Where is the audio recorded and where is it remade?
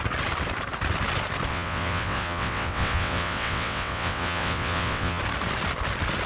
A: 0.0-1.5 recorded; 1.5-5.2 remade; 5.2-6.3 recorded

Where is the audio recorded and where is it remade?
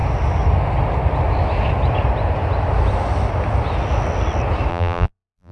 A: 0.0-4.7 recorded; 4.7-5.5 remade